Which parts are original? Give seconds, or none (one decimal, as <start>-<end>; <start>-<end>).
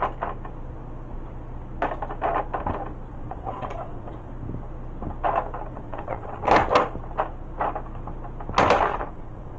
0.0-3.1; 4.3-5.7; 6.4-8.9